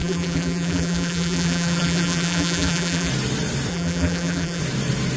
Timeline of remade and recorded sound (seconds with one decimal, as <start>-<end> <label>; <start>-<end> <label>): 0.0-3.1 remade; 3.1-3.7 recorded; 3.7-4.6 remade; 4.6-5.2 recorded